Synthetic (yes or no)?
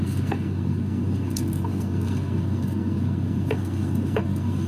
yes